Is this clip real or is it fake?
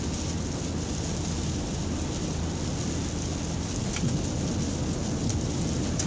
real